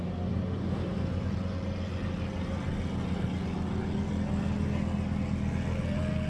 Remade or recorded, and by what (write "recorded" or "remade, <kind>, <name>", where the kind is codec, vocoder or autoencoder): recorded